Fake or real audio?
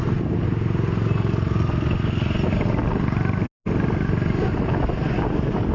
real